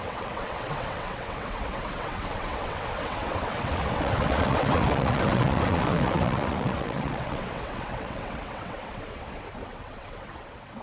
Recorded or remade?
remade